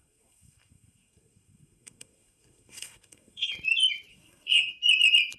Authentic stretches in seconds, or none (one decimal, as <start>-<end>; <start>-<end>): 3.5-4.1; 4.7-5.4